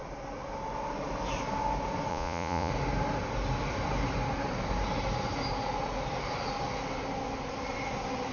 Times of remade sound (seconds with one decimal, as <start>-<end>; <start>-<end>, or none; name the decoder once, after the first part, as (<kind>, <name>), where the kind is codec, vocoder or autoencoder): 2.1-2.7 (vocoder, Vocos)